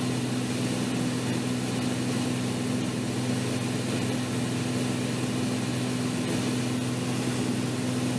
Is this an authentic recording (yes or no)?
yes